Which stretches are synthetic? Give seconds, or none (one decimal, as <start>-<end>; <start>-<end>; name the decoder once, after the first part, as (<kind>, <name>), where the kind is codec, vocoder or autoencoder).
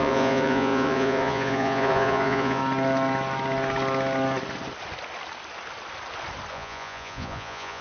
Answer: 0.0-2.6 (vocoder, Vocos); 6.5-7.8